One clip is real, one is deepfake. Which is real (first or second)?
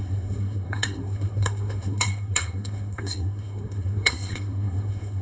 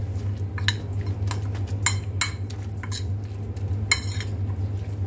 second